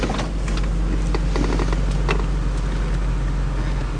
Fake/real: real